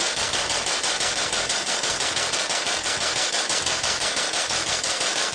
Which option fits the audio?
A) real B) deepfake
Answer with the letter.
B